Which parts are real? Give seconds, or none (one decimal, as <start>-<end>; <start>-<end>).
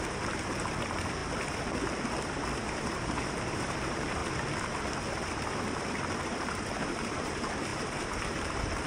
1.2-2.7; 4.2-5.9